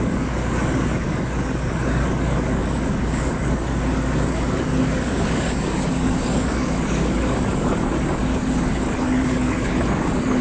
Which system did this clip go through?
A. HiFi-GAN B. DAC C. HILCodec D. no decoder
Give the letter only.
B